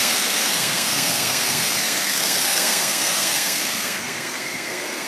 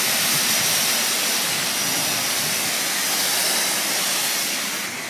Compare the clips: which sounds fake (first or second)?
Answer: first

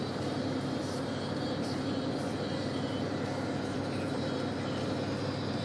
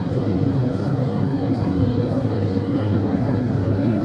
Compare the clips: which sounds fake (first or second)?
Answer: second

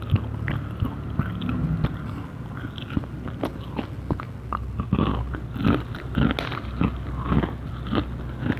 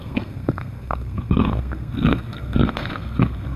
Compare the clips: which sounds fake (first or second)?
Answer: second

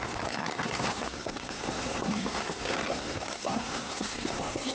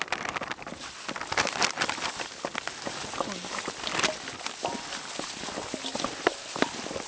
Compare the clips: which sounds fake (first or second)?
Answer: first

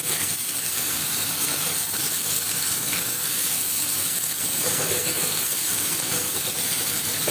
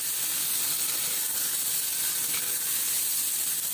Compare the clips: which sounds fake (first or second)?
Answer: first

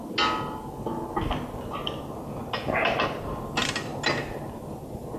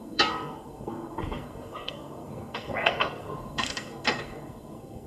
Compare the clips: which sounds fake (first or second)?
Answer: second